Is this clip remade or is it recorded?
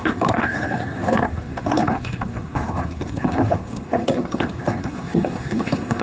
remade